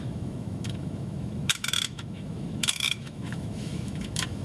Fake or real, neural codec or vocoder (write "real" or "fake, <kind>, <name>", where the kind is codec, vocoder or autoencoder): fake, autoencoder, DAC-VAE